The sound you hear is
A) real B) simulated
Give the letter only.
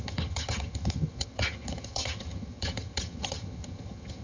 B